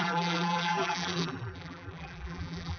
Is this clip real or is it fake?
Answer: fake